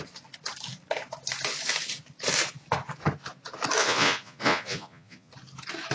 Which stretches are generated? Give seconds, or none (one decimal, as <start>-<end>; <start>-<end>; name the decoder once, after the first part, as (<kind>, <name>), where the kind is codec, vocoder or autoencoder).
3.8-5.3 (vocoder, Vocos)